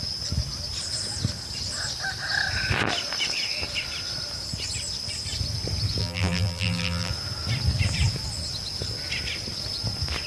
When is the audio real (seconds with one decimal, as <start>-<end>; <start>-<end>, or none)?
0.0-6.0; 7.1-10.3